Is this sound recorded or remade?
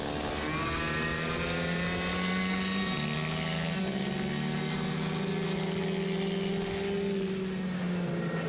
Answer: recorded